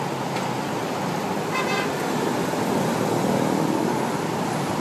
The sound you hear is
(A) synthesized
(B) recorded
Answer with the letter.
B